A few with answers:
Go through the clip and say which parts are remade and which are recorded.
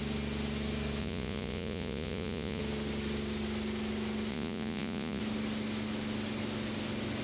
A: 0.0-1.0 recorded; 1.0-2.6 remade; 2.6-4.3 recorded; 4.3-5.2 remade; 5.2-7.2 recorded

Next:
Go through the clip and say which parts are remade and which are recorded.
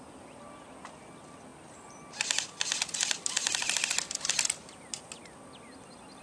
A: 0.0-1.5 recorded; 1.5-5.2 remade; 5.2-6.2 recorded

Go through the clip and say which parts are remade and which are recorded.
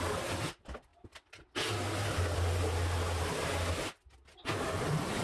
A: 0.0-5.2 recorded